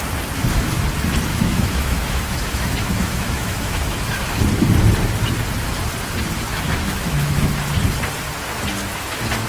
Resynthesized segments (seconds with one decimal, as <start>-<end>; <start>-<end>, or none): 1.3-4.4; 6.5-7.5